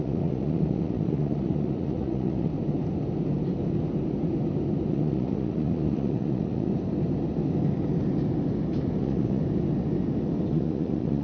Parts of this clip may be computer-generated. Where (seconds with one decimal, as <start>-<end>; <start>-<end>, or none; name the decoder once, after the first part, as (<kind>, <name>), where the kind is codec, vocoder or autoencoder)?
0.0-2.5 (vocoder, Vocos); 4.9-6.7; 9.0-9.4; 10.5-11.2